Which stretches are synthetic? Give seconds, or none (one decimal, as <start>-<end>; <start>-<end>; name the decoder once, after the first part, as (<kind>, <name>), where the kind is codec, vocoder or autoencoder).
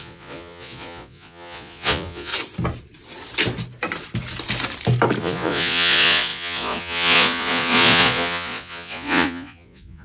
0.0-2.3 (vocoder, Vocos); 5.2-10.0